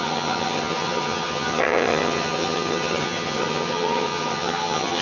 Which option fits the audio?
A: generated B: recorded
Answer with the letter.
A